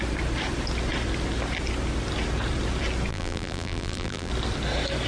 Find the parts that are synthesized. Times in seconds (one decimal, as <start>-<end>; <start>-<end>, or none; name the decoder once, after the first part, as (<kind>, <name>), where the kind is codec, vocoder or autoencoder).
3.1-4.3 (vocoder, BigVGAN v2)